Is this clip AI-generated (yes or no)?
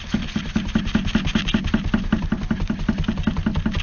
no